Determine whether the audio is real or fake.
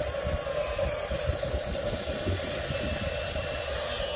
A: real